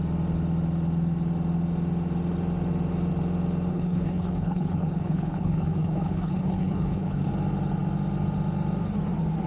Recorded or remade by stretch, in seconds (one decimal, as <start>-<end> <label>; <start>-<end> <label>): 0.0-3.7 recorded; 3.7-7.3 remade; 7.3-9.5 recorded